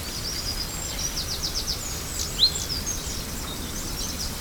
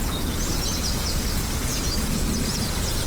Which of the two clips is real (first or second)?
first